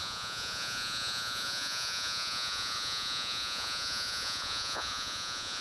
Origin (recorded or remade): remade